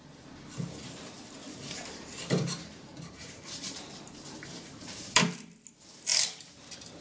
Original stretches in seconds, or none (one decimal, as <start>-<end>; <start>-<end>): 0.0-1.5; 5.2-7.0